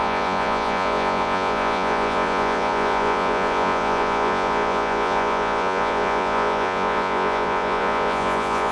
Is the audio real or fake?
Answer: fake